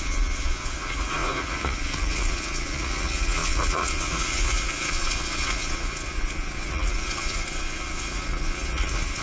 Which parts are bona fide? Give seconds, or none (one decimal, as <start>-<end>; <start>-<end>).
none